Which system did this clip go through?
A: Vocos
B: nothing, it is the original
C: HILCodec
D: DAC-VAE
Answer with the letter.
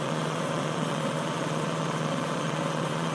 A